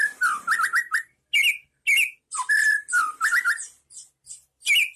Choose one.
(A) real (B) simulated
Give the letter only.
A